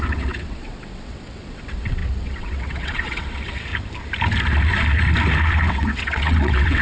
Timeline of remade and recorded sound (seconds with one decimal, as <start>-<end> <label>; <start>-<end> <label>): 0.0-3.7 remade; 3.7-5.7 recorded; 5.7-6.8 remade